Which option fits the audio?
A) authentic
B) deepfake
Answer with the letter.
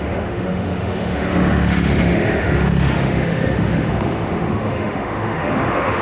B